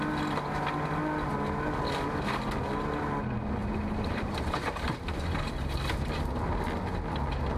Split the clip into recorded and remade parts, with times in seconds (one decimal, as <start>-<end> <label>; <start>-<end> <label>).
0.0-3.6 recorded; 3.6-6.0 remade; 6.0-7.6 recorded